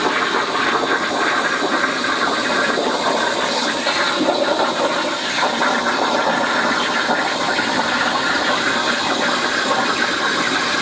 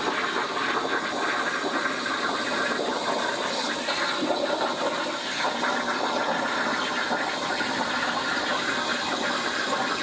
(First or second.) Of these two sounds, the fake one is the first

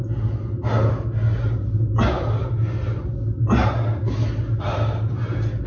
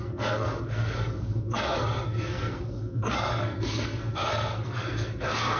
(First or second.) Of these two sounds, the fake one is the second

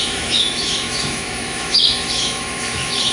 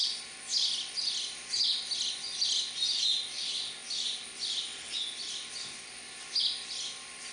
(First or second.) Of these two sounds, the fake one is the first